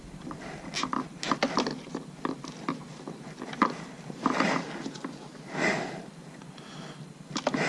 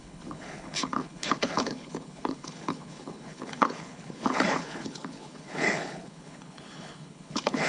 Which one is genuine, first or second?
first